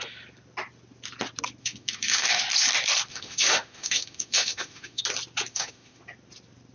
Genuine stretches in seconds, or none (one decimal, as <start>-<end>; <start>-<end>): 0.0-1.6; 2.4-3.1; 5.0-5.5; 6.0-6.7